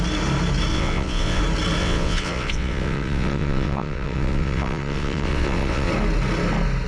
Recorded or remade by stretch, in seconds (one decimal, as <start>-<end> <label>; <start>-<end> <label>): 0.0-0.7 recorded; 0.7-1.4 remade; 1.4-1.8 recorded; 1.8-5.9 remade; 5.9-6.9 recorded